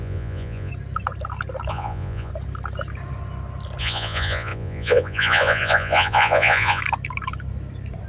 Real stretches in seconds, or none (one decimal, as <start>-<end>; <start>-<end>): 0.7-1.7; 2.3-3.8; 6.8-8.1